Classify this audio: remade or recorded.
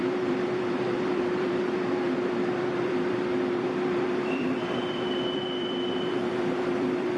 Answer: remade